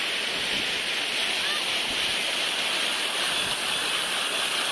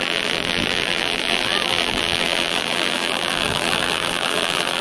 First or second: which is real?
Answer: first